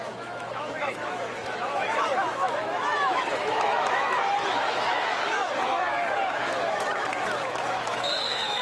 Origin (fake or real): fake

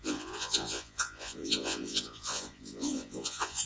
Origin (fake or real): fake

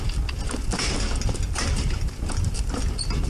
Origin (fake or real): real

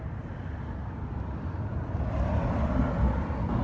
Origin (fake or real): real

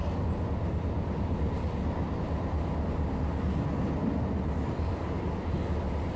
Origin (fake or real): real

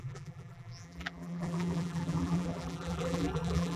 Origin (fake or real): fake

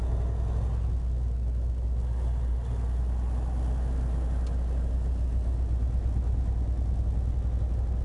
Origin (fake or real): real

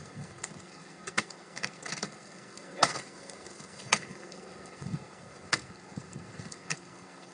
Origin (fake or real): fake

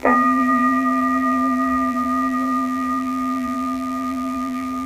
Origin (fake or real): fake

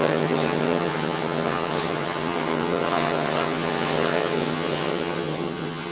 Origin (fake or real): fake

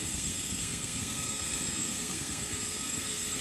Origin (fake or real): fake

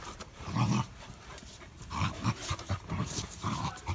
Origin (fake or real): fake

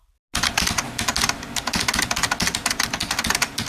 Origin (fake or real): real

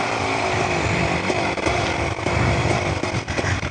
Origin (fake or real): fake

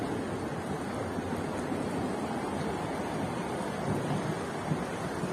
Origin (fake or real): real